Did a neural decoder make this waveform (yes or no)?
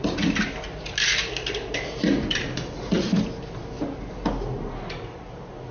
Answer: no